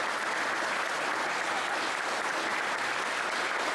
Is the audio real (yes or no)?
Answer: yes